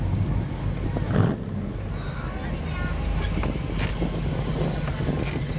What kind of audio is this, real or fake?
real